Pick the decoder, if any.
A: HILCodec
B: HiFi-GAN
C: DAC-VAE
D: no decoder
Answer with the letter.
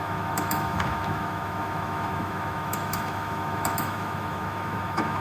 C